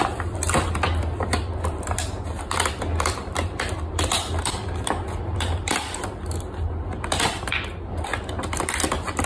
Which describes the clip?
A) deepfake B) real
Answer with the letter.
A